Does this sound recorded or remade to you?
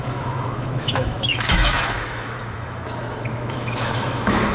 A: remade